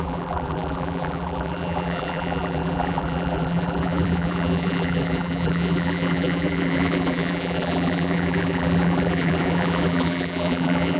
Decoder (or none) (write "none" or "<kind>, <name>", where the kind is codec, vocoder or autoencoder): vocoder, BigVGAN v2